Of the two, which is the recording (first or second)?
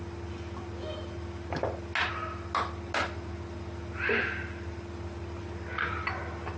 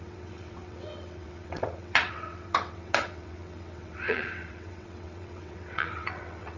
first